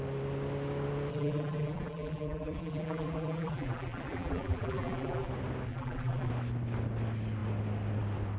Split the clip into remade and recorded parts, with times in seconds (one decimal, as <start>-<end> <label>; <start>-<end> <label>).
0.0-1.1 recorded; 1.1-5.3 remade; 5.3-5.7 recorded; 5.7-6.3 remade; 6.3-8.4 recorded